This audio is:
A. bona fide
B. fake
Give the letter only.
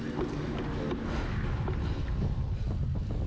A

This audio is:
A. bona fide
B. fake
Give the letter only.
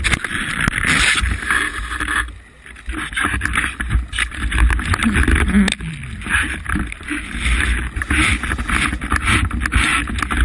A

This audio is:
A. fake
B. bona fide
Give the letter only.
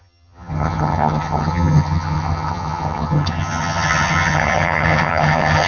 A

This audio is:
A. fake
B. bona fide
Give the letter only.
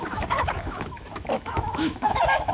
A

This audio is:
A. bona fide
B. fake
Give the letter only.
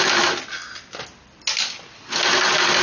A